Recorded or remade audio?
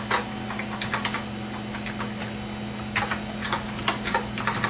recorded